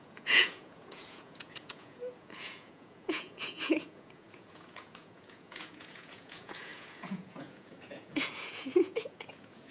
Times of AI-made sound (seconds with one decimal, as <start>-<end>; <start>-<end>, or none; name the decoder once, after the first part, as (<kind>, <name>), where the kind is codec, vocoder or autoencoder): 0.0-9.7 (vocoder, Vocos)